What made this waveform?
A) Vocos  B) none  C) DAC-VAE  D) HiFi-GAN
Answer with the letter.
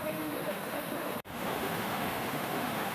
C